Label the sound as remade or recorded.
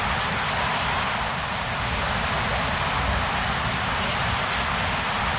recorded